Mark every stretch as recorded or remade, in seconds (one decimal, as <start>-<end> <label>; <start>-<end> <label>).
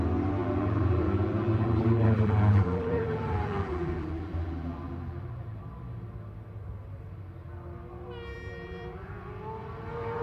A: 0.0-0.4 recorded; 0.4-5.6 remade; 5.6-8.3 recorded; 8.3-9.1 remade; 9.1-10.2 recorded